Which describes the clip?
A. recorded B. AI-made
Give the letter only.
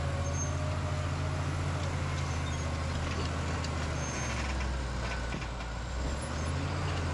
A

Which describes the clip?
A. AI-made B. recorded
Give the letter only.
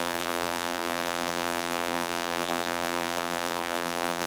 A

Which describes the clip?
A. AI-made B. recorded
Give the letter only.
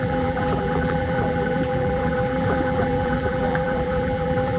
A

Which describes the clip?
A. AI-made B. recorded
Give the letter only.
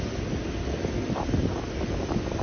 B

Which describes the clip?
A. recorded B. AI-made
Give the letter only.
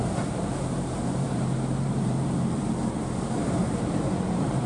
B